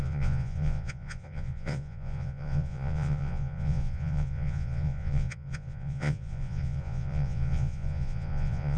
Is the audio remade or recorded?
remade